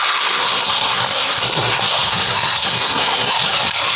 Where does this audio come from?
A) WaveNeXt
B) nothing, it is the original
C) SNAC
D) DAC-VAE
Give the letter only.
C